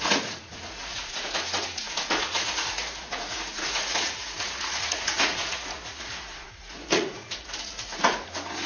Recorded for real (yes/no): no